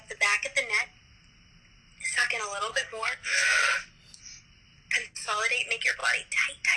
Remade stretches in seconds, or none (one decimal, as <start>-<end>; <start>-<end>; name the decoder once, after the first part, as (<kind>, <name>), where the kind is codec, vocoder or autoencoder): 2.7-3.7 (codec, SNAC)